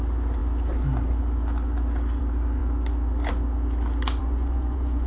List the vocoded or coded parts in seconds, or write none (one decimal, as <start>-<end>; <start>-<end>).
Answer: 4.2-5.1